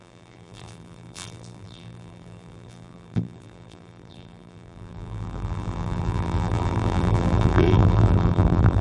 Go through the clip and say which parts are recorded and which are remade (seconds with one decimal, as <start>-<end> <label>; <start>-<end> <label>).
0.0-8.8 remade